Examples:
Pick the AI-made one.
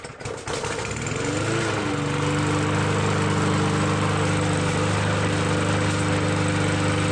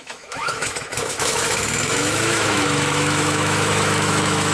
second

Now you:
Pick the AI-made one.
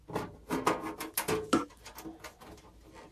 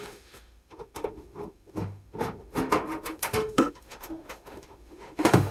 second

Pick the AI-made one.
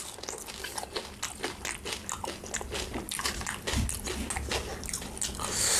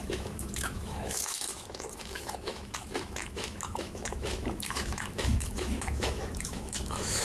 second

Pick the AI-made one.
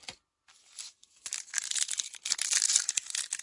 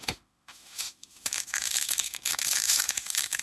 second